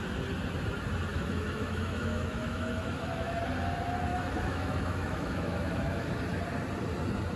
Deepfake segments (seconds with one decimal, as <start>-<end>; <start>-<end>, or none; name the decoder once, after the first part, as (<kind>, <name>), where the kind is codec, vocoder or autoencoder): 1.1-3.4 (autoencoder, DAC-VAE); 4.1-6.1